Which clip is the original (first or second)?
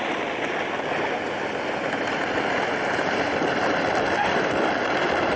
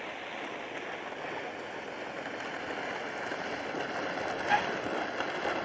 second